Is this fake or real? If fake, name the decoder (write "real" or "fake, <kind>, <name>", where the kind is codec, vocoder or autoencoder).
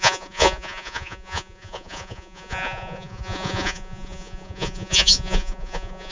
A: fake, vocoder, Vocos